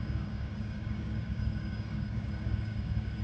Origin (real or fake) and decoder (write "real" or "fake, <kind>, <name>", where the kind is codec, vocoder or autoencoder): fake, codec, DAC